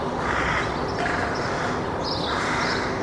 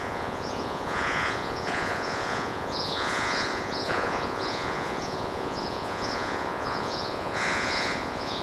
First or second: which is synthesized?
second